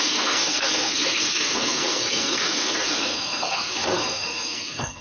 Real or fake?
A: fake